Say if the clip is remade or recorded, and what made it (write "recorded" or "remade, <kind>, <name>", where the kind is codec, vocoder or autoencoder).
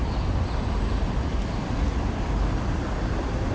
recorded